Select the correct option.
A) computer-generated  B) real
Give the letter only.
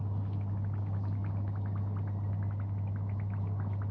B